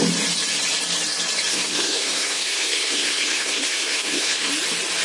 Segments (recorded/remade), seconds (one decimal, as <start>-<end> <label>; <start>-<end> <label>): 0.0-1.5 recorded; 1.5-4.5 remade; 4.5-5.0 recorded